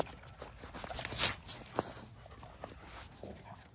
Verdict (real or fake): real